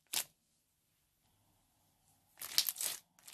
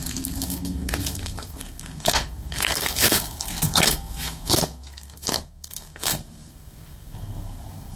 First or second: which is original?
first